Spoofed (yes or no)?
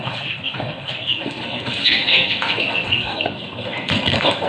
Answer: yes